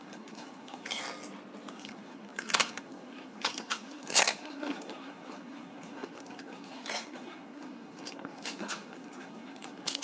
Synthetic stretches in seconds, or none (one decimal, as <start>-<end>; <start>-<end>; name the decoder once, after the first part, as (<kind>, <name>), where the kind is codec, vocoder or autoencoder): 0.0-1.0 (codec, SNAC); 1.7-10.0

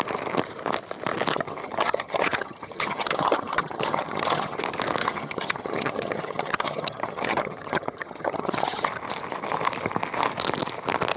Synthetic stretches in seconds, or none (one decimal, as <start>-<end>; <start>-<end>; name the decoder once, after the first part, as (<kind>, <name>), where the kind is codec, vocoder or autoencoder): 1.3-4.6 (vocoder, HiFi-GAN); 5.0-8.9

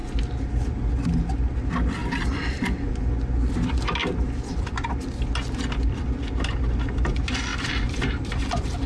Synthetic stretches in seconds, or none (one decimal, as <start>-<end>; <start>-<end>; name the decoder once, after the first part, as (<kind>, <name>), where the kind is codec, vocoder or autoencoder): none

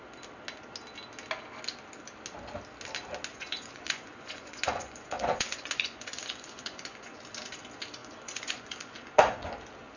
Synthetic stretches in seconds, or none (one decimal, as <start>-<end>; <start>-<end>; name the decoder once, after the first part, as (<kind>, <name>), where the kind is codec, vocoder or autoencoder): 3.3-7.2 (vocoder, Vocos); 8.0-9.5